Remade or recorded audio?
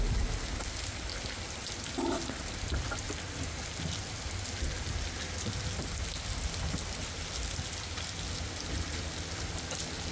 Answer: recorded